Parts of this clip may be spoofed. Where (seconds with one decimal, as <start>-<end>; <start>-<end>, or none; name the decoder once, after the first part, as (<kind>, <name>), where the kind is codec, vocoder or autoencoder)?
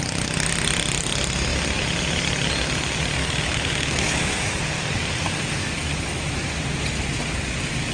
3.2-4.6 (autoencoder, DAC-VAE); 5.6-6.5